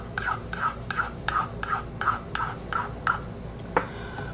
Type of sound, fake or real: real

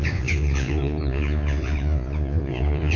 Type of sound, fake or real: fake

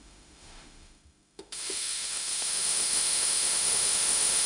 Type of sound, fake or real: fake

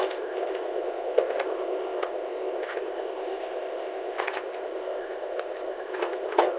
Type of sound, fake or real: fake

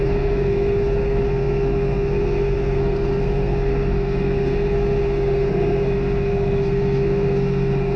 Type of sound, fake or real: fake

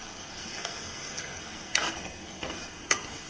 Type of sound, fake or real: fake